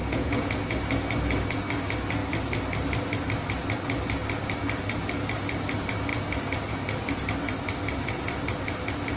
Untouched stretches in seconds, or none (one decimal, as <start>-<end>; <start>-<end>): 0.5-9.2